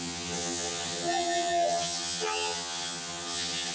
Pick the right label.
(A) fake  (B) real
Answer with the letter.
A